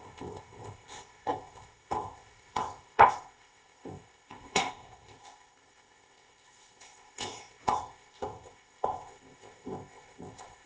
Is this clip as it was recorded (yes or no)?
no